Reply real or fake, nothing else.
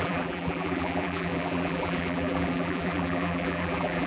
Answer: fake